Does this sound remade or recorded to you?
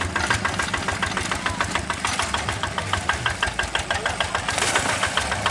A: recorded